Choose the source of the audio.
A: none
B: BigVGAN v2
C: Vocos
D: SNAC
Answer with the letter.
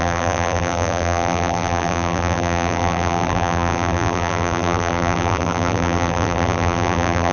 B